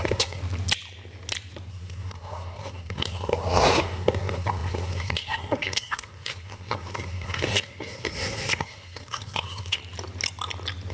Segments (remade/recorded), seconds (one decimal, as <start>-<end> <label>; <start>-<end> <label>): 0.0-0.4 remade; 0.4-1.7 recorded; 1.7-9.8 remade; 9.8-10.9 recorded